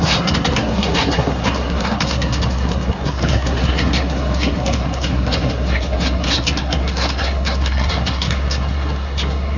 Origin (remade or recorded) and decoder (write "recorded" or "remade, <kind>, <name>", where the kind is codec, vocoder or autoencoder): remade, codec, SNAC